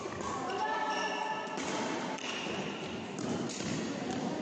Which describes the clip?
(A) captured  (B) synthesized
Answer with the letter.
A